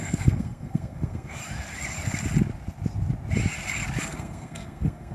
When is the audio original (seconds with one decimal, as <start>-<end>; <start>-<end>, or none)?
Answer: 1.4-4.0